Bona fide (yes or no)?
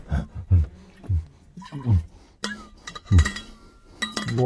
yes